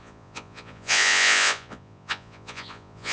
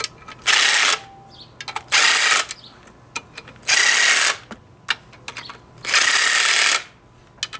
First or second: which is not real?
first